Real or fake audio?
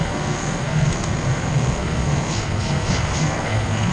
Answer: fake